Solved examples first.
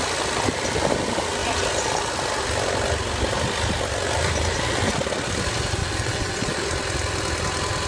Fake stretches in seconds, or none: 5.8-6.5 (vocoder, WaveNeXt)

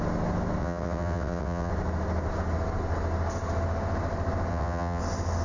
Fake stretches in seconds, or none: 0.6-1.7 (vocoder, WaveNeXt); 4.5-5.0

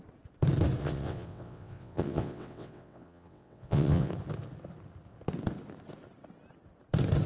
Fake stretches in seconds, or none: 0.8-4.1 (vocoder, WaveNeXt)

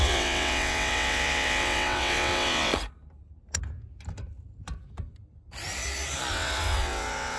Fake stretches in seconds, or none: 0.0-2.7 (vocoder, WaveNeXt); 6.3-7.4